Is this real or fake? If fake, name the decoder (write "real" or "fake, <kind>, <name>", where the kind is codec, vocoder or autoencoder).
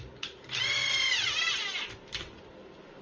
real